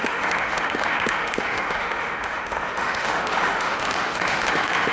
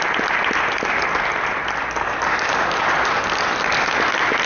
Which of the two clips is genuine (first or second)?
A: second